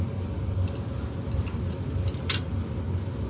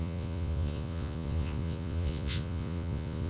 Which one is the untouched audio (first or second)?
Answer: first